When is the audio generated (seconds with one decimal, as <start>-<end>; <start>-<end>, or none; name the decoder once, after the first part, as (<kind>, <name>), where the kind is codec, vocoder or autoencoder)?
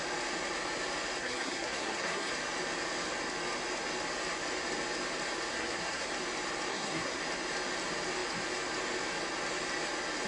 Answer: 1.2-2.3 (codec, SNAC); 5.5-6.1; 6.7-7.2